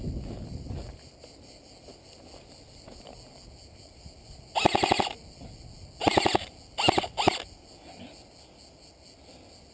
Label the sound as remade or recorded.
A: recorded